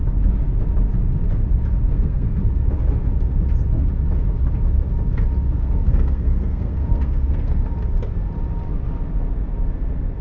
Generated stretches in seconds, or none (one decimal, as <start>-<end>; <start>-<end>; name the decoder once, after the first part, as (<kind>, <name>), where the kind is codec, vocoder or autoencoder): 1.9-2.4 (codec, SNAC); 5.6-7.6